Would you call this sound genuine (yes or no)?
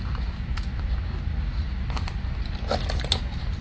yes